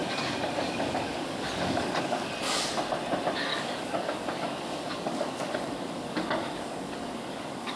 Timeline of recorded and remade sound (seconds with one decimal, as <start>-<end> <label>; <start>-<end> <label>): 0.0-2.3 remade; 2.3-3.5 recorded; 3.5-7.8 remade